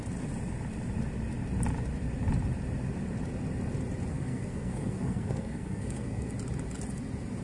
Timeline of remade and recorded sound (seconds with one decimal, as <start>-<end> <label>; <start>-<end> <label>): 0.0-4.1 recorded; 4.1-6.3 remade; 6.3-7.4 recorded